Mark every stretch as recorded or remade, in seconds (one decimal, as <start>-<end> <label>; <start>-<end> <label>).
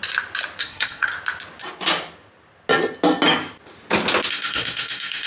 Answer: 0.0-0.6 recorded; 0.6-1.1 remade; 1.1-4.3 recorded; 4.3-5.3 remade